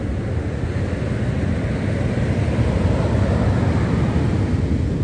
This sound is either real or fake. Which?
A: real